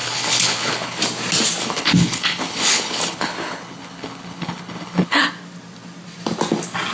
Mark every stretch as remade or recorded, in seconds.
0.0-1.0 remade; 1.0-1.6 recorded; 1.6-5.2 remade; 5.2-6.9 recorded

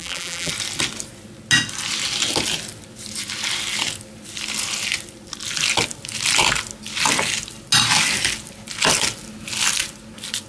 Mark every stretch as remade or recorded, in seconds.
0.0-0.5 remade; 0.5-10.5 recorded

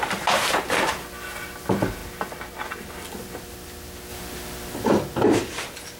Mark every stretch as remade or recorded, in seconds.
0.0-6.0 recorded